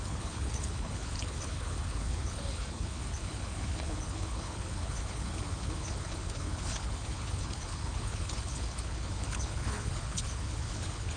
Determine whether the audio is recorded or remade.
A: remade